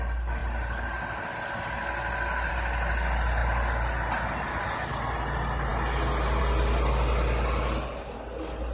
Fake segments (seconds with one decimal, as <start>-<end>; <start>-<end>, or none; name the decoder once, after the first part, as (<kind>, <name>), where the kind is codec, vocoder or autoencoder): none